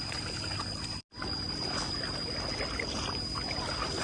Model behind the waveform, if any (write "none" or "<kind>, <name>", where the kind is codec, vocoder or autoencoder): none